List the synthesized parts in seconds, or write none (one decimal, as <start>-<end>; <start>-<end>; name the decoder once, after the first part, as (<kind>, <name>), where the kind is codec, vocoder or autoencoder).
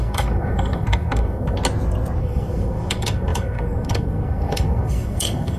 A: 0.0-1.6 (codec, SNAC); 2.2-5.6